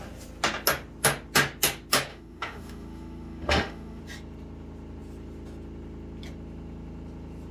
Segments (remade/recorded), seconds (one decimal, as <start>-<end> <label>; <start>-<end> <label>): 0.0-2.1 recorded; 2.1-4.0 remade; 4.0-7.5 recorded